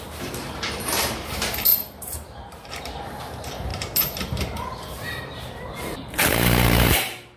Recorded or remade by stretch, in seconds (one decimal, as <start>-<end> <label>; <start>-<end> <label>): 0.0-7.4 remade